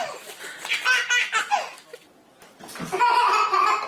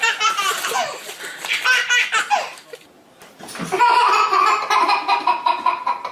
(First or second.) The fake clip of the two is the second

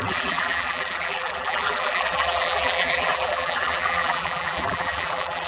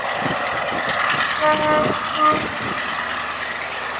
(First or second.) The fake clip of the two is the first